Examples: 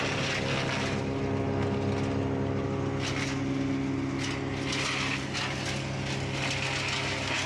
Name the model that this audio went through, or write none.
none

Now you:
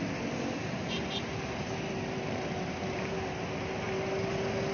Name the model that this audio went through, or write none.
none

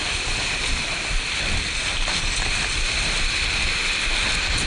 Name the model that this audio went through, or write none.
vocoder, BigVGAN v2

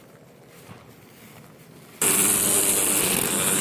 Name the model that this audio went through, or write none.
none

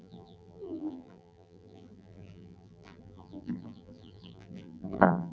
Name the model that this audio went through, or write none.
vocoder, BigVGAN v2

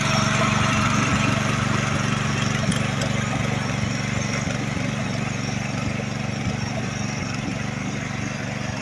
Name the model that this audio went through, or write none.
none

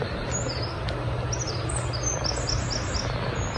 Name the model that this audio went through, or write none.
none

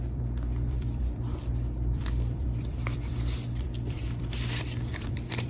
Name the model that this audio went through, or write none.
vocoder, BigVGAN v2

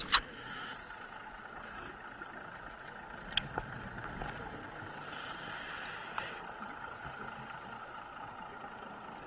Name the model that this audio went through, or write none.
none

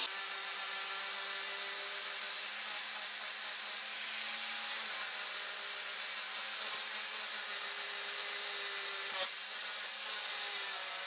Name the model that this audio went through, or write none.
none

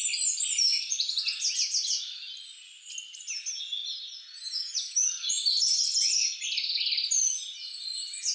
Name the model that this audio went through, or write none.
none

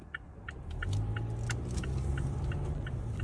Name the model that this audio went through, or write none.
none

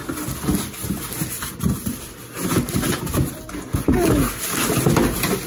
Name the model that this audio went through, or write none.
none